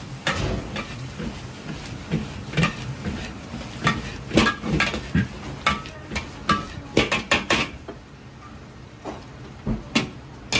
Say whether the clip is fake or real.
real